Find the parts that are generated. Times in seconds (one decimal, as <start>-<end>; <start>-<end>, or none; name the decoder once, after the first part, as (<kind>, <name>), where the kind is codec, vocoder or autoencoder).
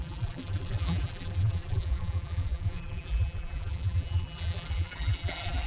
0.0-5.7 (vocoder, BigVGAN v2)